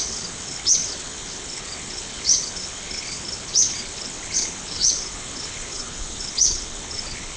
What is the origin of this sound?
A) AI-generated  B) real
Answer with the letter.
A